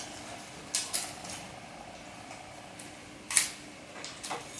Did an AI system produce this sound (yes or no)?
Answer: no